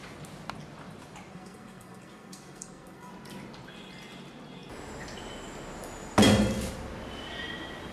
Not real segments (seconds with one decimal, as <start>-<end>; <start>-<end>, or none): 1.3-3.1